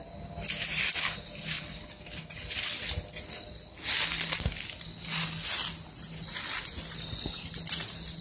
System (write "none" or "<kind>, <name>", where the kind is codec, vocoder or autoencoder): none